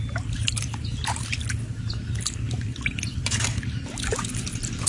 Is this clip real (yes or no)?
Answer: yes